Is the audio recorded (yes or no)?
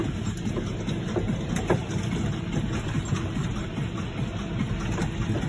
yes